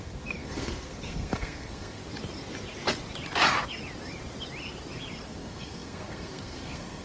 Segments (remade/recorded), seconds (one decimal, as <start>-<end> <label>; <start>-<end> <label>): 0.0-2.0 remade; 2.0-5.3 recorded; 5.3-7.0 remade